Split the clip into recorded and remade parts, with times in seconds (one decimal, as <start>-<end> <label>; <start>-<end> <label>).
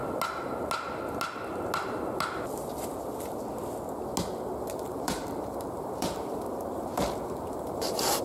0.0-4.7 recorded; 4.7-8.2 remade